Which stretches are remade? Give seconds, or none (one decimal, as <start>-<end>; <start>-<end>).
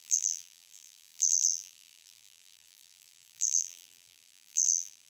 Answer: 0.0-5.1